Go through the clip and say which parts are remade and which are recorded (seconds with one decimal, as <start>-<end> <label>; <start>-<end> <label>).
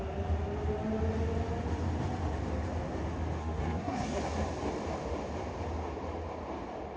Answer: 0.0-3.4 recorded; 3.4-4.2 remade; 4.2-7.0 recorded